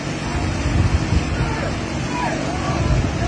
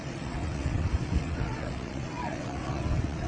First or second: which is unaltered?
first